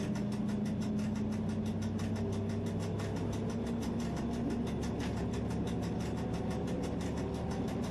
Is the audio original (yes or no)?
yes